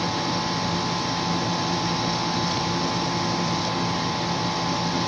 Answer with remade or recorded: recorded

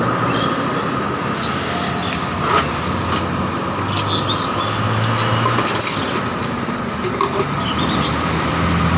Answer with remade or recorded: recorded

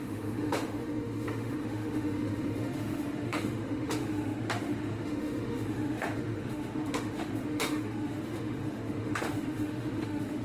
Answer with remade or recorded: remade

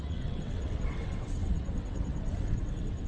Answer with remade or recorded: remade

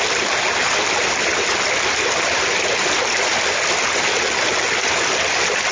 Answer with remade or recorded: recorded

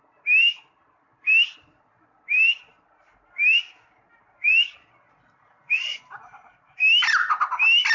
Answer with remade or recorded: remade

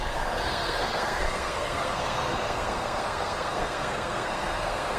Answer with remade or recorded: remade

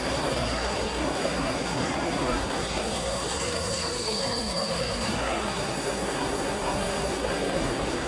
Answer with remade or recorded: remade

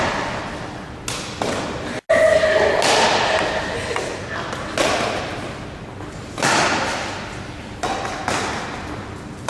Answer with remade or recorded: recorded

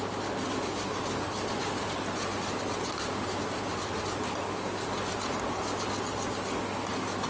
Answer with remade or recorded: recorded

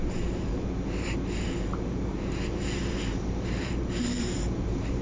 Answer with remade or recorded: remade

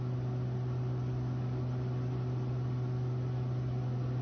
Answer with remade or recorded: recorded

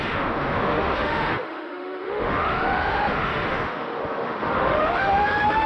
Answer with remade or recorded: remade